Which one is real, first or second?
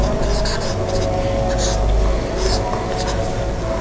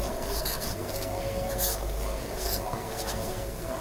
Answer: first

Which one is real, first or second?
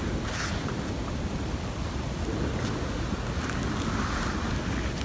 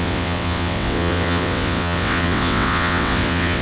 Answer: first